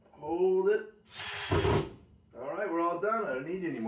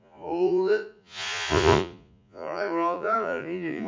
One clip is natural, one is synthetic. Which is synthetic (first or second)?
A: second